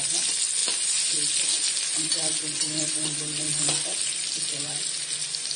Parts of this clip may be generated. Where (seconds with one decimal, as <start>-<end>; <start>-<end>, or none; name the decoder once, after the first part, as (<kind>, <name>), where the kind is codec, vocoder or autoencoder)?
none